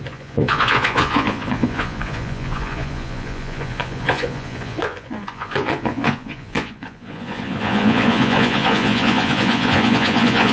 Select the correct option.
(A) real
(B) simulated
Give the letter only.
B